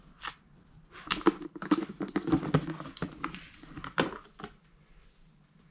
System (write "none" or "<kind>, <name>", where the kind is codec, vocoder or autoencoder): none